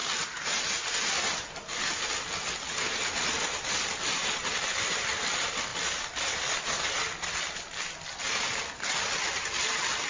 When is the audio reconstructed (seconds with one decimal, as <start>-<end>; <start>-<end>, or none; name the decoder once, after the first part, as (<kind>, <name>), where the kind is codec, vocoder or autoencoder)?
2.0-10.1 (vocoder, BigVGAN v2)